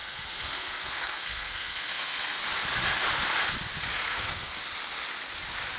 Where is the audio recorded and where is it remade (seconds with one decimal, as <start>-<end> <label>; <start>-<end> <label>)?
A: 0.0-2.4 remade; 2.4-3.9 recorded; 3.9-4.6 remade; 4.6-5.8 recorded